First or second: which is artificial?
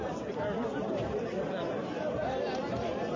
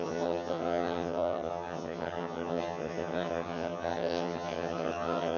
second